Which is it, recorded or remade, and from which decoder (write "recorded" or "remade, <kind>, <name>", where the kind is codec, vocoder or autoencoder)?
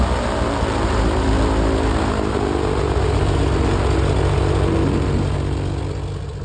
recorded